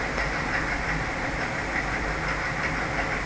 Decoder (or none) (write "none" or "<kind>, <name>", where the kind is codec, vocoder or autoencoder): none